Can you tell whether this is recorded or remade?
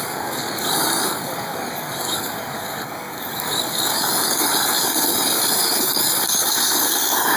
remade